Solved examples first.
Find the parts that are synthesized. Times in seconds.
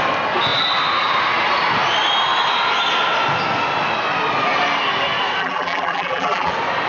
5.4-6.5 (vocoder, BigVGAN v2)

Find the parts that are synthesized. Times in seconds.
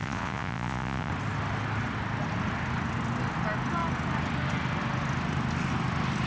0.0-1.1 (vocoder, Vocos)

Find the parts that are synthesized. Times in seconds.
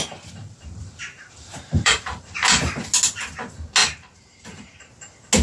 0.4-2.7 (vocoder, BigVGAN v2); 3.8-4.9